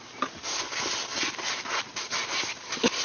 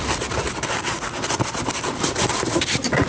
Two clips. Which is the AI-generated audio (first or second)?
second